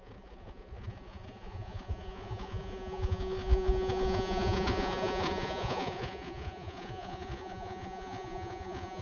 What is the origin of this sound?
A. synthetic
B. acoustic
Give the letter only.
A